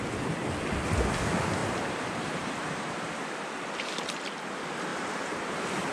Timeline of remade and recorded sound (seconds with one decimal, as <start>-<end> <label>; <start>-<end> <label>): 0.0-1.6 recorded; 1.6-3.5 remade; 3.5-4.9 recorded; 4.9-5.9 remade